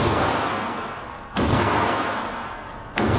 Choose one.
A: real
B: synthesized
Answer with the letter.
B